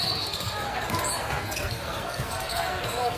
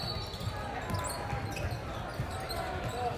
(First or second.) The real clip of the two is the second